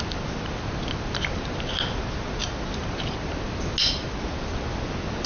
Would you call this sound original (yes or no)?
yes